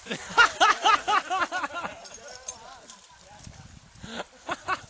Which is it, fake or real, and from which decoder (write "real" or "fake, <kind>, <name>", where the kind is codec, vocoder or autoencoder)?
real